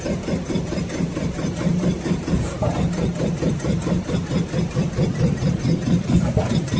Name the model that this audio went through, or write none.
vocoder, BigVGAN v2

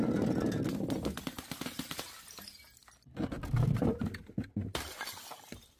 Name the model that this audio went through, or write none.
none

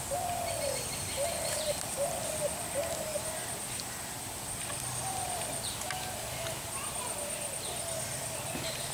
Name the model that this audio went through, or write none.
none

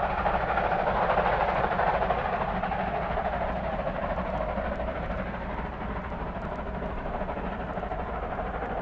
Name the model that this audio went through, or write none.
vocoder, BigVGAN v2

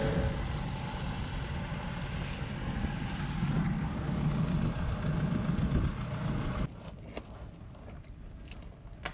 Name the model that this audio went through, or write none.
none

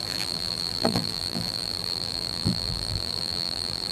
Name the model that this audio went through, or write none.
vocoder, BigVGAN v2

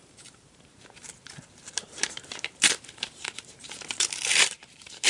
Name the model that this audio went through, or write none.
vocoder, BigVGAN v2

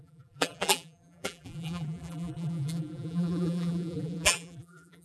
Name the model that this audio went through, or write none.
vocoder, BigVGAN v2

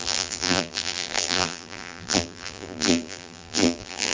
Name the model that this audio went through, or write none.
vocoder, BigVGAN v2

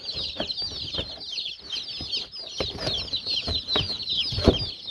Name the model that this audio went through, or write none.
none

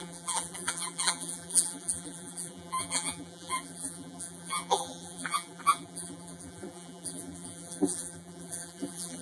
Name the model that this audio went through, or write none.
vocoder, BigVGAN v2